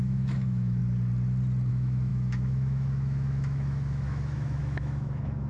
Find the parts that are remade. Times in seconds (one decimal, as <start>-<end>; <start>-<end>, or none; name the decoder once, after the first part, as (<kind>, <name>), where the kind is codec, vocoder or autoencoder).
0.0-0.8 (autoencoder, DAC-VAE); 1.7-5.5